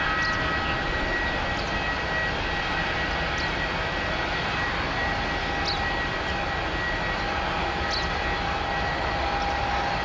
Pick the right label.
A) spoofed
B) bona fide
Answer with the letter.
B